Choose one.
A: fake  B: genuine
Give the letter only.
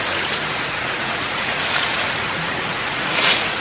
A